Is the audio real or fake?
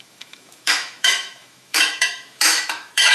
fake